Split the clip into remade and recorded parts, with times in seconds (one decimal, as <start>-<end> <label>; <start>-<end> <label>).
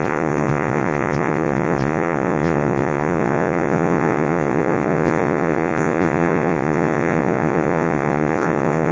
0.0-8.9 remade